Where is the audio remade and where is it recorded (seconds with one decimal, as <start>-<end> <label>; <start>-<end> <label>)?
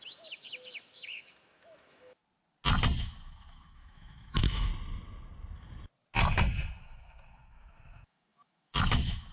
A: 0.0-2.2 remade; 2.2-3.0 recorded; 3.0-4.7 remade; 4.7-6.8 recorded; 6.8-9.3 remade